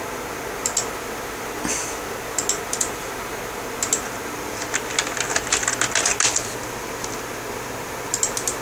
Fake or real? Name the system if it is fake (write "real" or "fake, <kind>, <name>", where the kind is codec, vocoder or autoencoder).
real